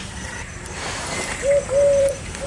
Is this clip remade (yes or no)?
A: yes